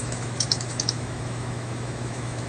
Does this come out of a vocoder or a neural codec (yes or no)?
yes